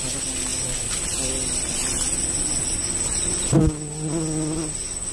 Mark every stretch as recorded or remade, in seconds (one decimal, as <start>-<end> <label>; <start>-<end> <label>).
0.0-5.1 recorded